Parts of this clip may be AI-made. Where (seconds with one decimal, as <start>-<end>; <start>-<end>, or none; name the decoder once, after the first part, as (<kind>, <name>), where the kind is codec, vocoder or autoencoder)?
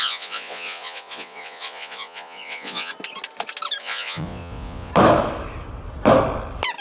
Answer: 0.0-2.9 (vocoder, Vocos); 3.8-4.9